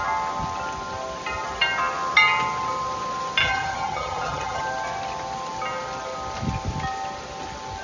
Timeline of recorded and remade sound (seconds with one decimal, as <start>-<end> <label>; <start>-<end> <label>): 0.0-3.4 recorded; 3.4-4.6 remade; 4.6-7.8 recorded